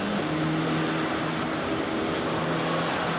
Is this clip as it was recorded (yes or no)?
yes